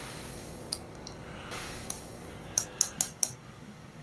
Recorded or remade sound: remade